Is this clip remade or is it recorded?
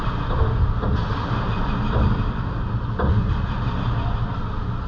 recorded